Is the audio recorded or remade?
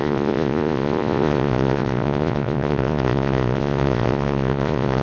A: remade